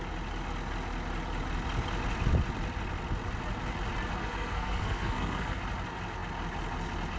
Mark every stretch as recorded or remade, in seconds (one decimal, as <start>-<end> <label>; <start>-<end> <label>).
0.0-4.2 recorded; 4.2-5.6 remade; 5.6-7.2 recorded